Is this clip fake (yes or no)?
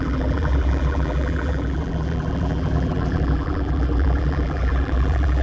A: yes